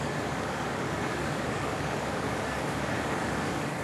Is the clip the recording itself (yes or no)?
no